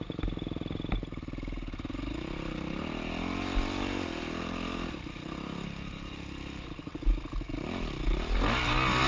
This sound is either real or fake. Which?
real